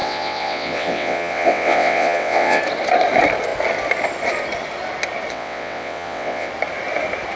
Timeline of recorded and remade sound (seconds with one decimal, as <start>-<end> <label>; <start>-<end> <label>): 0.0-2.6 remade; 2.6-5.3 recorded; 5.3-6.5 remade; 6.5-7.4 recorded